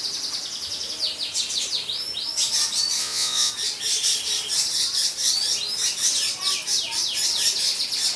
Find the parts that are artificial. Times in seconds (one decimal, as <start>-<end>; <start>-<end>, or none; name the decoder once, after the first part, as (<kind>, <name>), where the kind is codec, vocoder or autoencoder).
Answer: 3.0-3.5 (vocoder, Vocos)